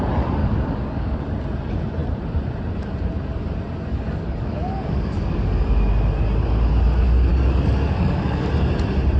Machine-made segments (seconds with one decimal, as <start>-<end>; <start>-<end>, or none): 0.4-1.2; 3.9-5.7; 7.3-8.5